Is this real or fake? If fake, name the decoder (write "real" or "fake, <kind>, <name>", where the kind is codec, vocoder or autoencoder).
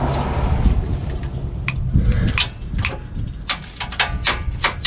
real